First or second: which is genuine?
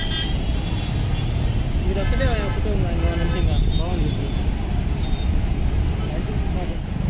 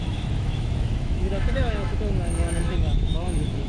first